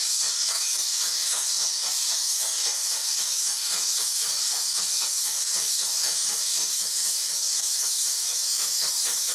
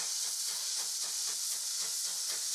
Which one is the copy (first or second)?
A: first